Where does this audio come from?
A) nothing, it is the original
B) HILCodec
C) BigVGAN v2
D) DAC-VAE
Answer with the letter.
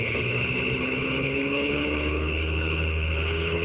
B